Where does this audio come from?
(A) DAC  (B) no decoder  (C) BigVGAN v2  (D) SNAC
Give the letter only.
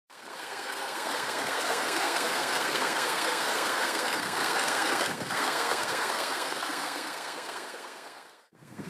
D